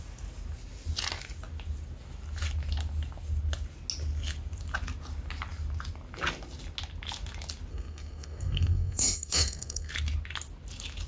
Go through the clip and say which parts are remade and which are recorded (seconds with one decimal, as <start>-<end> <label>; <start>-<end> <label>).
0.0-7.7 recorded; 7.7-9.9 remade; 9.9-11.1 recorded